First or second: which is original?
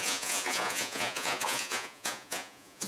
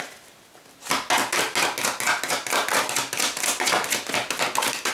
second